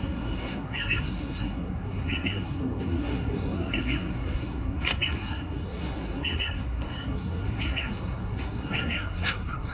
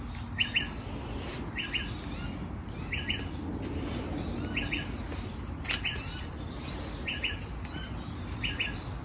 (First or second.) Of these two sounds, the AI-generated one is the first